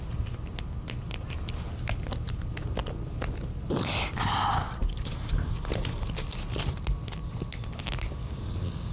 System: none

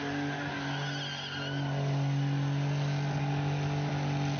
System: none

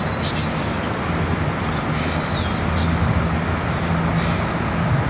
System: none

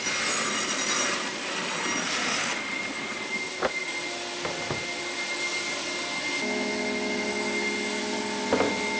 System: none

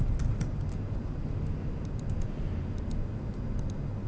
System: none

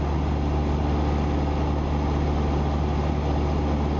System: none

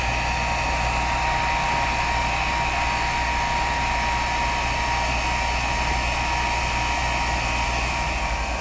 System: none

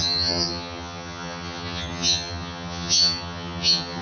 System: vocoder, HiFi-GAN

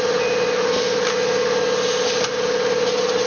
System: none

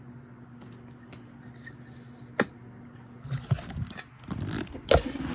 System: none